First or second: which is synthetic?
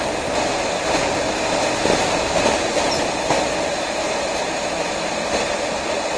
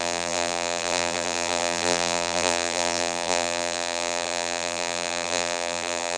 second